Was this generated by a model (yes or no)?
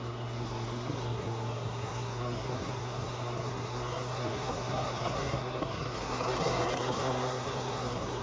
yes